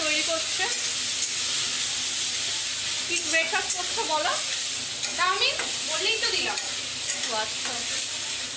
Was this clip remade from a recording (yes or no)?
no